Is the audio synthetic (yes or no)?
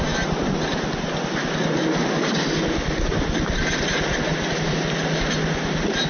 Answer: no